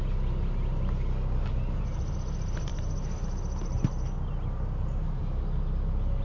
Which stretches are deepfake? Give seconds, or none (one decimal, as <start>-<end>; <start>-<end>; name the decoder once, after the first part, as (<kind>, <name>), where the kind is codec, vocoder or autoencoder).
none